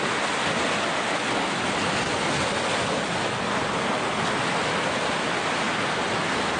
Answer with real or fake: real